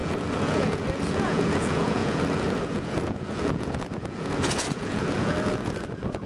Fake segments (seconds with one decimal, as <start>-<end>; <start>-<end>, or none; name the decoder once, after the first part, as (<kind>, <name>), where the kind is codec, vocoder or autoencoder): 0.0-6.3 (vocoder, Vocos)